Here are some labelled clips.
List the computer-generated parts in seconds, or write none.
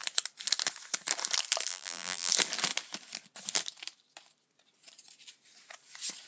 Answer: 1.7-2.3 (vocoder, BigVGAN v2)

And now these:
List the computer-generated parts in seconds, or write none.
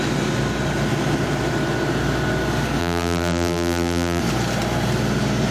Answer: 2.8-4.2 (vocoder, BigVGAN v2)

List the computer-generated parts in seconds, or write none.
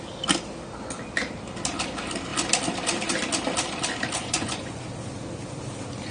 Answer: 4.2-4.8 (vocoder, Vocos)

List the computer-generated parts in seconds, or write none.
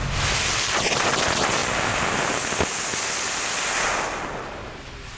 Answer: none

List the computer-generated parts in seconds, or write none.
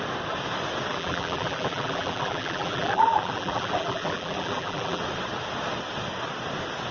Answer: 0.9-5.0 (vocoder, BigVGAN v2)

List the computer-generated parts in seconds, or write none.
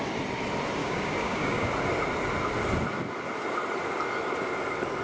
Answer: 0.8-1.7 (codec, DAC)